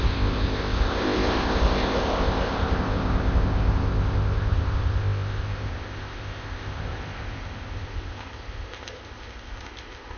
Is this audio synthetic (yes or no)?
yes